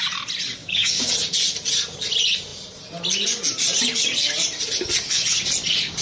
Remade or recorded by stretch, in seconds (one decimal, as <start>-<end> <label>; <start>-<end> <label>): 0.0-0.6 recorded; 0.6-1.1 remade; 1.1-6.0 recorded

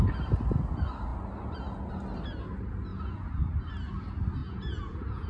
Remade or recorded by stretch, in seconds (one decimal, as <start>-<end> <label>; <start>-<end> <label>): 0.0-2.9 recorded; 2.9-3.4 remade; 3.4-4.4 recorded; 4.4-5.3 remade